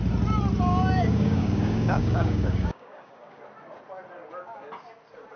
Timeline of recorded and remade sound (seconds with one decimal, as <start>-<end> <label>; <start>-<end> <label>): 0.0-0.7 recorded; 0.7-3.4 remade; 3.4-5.4 recorded